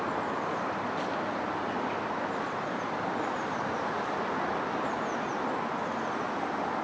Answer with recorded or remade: remade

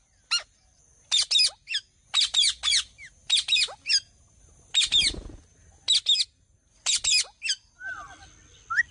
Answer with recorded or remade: recorded